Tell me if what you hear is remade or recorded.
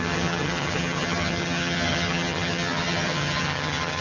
remade